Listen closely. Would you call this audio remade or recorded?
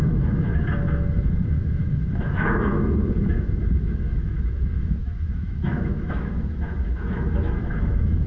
remade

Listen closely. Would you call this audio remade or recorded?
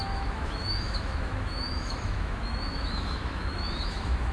remade